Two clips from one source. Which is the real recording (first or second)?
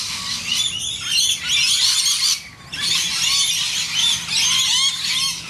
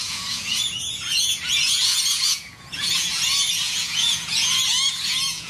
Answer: first